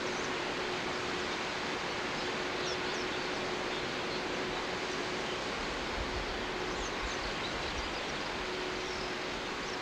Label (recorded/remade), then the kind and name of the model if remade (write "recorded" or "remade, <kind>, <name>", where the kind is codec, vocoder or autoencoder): recorded